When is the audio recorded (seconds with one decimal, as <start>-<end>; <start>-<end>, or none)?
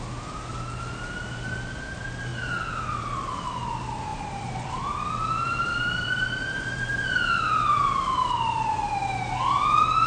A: 0.0-4.1; 8.4-10.1